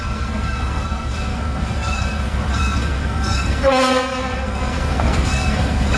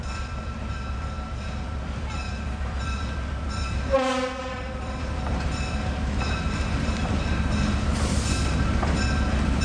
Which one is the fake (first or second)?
first